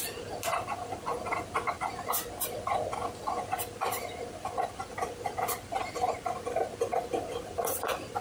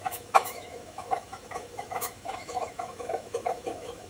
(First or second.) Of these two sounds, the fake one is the second